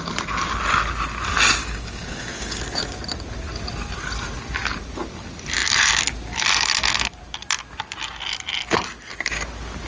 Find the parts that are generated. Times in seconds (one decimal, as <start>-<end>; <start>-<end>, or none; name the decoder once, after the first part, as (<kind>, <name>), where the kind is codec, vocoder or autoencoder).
1.6-2.6 (codec, DAC)